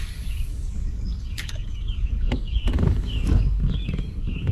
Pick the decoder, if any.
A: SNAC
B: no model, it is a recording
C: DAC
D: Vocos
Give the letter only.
C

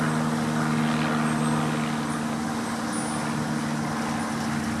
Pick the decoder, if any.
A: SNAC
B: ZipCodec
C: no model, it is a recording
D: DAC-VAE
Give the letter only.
C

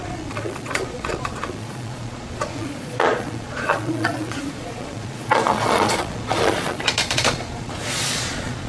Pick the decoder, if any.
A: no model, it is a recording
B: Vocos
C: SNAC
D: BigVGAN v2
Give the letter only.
B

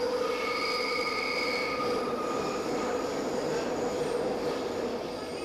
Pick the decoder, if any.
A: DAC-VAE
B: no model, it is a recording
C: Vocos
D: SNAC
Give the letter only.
B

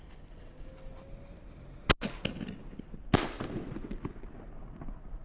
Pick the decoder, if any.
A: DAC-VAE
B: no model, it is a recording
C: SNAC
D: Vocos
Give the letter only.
B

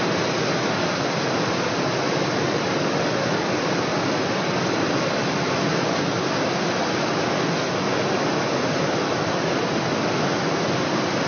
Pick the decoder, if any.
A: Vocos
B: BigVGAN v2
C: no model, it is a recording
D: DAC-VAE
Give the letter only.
C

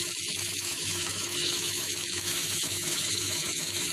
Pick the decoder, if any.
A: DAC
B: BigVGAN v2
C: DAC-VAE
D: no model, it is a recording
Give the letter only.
C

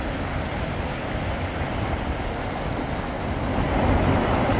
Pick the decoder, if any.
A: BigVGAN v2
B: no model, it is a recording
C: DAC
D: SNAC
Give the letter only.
B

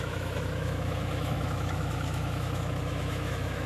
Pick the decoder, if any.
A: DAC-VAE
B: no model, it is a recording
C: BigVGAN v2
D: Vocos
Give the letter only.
A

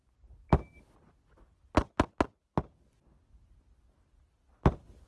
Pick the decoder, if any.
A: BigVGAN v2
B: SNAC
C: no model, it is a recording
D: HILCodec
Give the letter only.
C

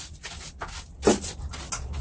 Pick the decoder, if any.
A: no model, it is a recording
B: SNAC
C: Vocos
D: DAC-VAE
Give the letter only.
A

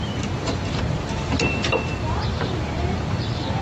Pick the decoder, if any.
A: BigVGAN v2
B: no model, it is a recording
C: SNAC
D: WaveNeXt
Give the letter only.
A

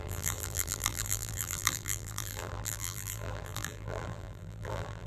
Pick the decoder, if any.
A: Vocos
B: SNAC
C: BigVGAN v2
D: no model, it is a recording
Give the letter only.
C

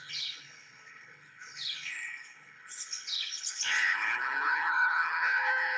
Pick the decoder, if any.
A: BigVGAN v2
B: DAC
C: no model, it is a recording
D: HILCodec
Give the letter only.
D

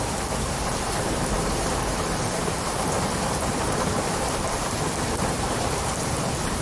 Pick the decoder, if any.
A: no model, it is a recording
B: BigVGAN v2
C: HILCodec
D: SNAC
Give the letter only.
B